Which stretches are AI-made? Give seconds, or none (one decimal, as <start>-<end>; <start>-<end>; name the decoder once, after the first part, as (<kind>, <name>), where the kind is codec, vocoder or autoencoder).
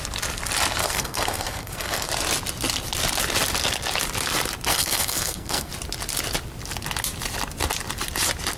0.8-2.1 (codec, SNAC); 4.7-5.7